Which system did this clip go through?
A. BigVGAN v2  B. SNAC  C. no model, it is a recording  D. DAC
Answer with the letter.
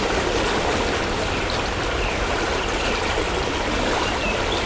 C